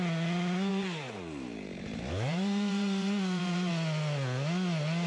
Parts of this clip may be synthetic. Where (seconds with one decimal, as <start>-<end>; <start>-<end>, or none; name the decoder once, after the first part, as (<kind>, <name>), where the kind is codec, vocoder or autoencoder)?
0.7-3.7 (vocoder, BigVGAN v2)